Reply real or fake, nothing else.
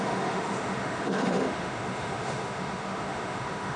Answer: fake